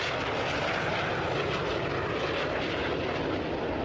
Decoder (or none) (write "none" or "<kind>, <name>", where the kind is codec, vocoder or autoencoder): none